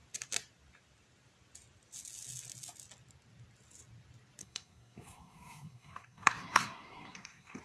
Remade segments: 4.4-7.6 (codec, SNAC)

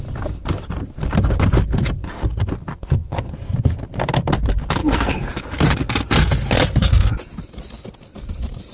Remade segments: 2.7-3.3 (codec, SNAC); 4.8-5.3

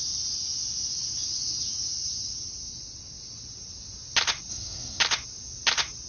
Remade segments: 4.5-5.0 (codec, SNAC)

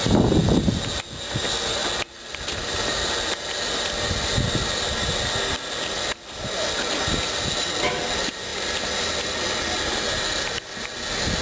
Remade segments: none

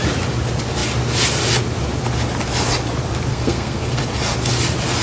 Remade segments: 3.3-4.0 (codec, SNAC)